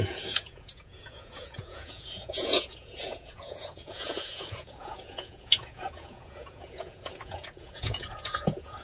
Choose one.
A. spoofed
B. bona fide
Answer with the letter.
A